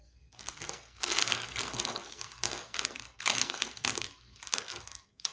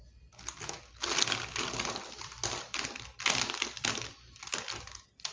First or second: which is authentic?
second